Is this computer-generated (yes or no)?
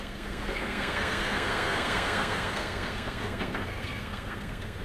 yes